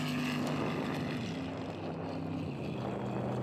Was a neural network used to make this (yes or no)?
no